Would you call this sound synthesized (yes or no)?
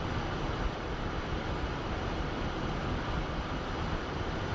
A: no